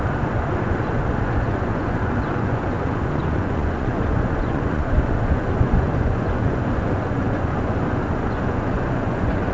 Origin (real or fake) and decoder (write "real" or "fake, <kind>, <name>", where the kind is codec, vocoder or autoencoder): fake, vocoder, Vocos